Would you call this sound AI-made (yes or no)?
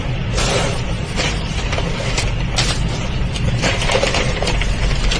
no